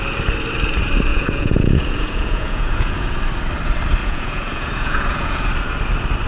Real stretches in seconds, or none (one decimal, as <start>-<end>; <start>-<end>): 0.0-1.1; 3.1-4.0; 5.5-6.3